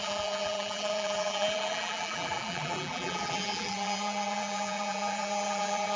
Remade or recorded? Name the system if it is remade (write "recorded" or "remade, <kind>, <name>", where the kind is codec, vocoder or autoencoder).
remade, vocoder, BigVGAN v2